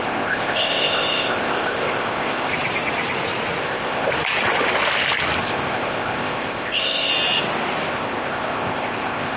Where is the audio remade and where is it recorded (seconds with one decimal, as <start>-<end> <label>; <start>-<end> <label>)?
0.0-2.5 remade; 2.5-3.6 recorded; 3.6-4.1 remade; 4.1-5.4 recorded; 5.4-7.1 remade; 7.1-7.9 recorded; 7.9-9.4 remade